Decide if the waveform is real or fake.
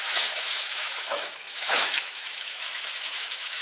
fake